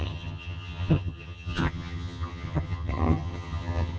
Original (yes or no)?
no